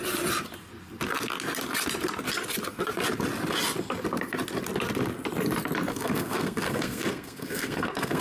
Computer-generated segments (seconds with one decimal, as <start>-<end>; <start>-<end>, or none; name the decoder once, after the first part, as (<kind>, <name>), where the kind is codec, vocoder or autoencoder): 5.9-8.2 (codec, SNAC)